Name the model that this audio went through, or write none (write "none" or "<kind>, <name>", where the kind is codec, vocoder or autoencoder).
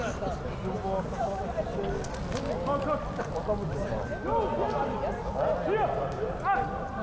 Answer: none